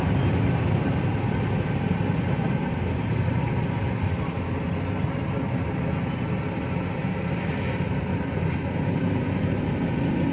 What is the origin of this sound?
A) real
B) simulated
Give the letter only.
A